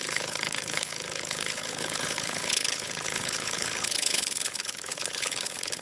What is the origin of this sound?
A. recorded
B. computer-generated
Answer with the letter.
B